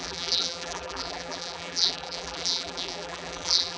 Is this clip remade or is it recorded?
remade